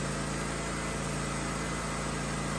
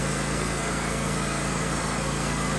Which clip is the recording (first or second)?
first